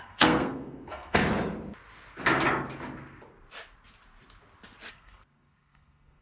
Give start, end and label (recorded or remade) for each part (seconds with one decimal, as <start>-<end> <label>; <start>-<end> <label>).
0.0-1.2 remade; 1.2-4.9 recorded; 4.9-6.2 remade